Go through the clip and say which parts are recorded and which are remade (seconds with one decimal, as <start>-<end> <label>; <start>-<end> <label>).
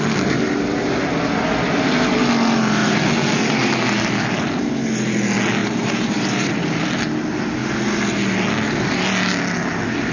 0.0-5.6 recorded; 5.6-6.9 remade; 6.9-10.1 recorded